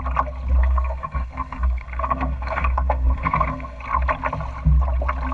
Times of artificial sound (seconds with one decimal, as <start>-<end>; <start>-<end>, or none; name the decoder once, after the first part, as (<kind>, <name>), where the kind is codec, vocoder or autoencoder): 0.6-3.8 (codec, SNAC)